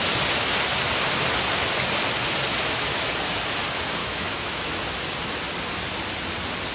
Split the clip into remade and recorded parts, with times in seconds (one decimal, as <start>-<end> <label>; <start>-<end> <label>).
0.0-2.5 recorded; 2.5-3.1 remade; 3.1-4.0 recorded; 4.0-4.7 remade; 4.7-6.7 recorded